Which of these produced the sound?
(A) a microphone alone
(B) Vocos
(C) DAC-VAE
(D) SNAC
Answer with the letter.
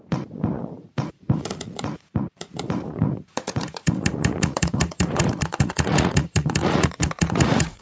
B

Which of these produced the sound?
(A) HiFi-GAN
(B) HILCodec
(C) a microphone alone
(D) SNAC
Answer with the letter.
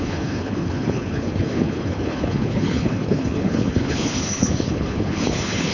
B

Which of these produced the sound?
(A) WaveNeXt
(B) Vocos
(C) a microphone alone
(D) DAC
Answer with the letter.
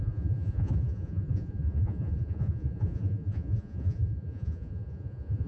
B